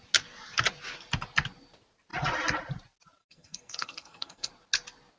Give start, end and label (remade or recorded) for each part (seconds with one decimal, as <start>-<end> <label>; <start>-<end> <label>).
0.0-3.2 recorded; 3.2-4.5 remade; 4.5-5.2 recorded